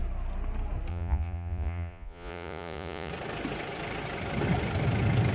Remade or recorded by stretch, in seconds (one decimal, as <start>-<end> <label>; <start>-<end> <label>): 0.0-0.9 recorded; 0.9-3.1 remade; 3.1-5.3 recorded